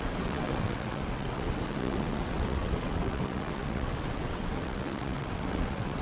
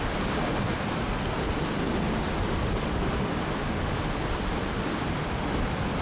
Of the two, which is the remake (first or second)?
first